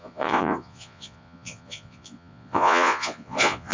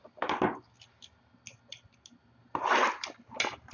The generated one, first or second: first